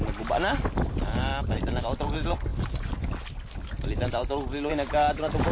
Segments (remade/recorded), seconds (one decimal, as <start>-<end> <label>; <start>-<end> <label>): 0.0-5.5 recorded

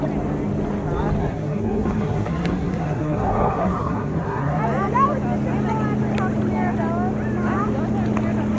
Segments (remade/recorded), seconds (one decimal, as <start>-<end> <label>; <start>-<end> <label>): 0.0-1.2 recorded; 1.2-4.6 remade; 4.6-8.6 recorded

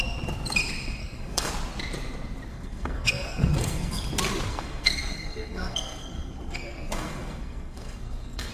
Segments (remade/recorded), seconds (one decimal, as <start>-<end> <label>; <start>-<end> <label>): 0.0-1.0 recorded; 1.0-1.5 remade; 1.5-2.5 recorded; 2.5-4.0 remade; 4.0-4.5 recorded; 4.5-8.5 remade